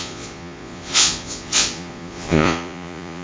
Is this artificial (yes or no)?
yes